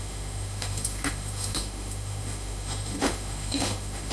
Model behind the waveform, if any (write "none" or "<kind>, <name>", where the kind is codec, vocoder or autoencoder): autoencoder, DAC-VAE